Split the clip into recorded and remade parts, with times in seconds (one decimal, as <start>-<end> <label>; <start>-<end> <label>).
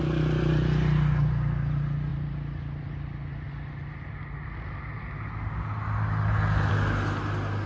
0.0-7.7 recorded